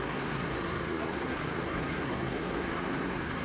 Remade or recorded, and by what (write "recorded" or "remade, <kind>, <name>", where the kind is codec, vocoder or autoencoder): remade, codec, SNAC